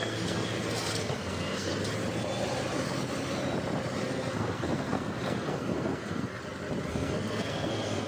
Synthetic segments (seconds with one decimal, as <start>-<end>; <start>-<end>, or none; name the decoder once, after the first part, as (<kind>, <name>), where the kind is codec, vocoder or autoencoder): 0.0-1.7 (codec, SNAC); 4.0-6.4; 6.9-8.1